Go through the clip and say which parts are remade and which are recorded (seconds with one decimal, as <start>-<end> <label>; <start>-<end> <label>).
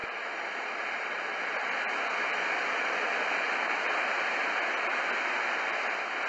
0.0-6.3 recorded